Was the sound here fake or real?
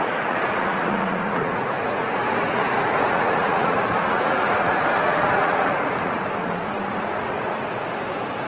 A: fake